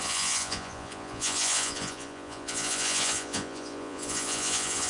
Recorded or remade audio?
remade